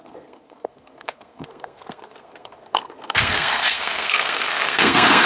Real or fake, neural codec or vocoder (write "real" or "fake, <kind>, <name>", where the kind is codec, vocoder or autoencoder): fake, codec, SNAC